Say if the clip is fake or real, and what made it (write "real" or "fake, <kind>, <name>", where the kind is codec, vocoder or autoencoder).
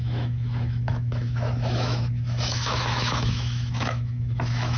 fake, autoencoder, DAC-VAE